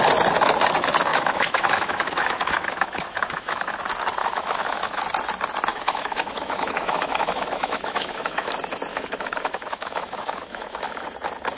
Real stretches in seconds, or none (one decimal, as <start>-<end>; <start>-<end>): 0.0-1.1; 3.7-4.2; 5.0-5.7; 8.5-8.9; 11.0-11.6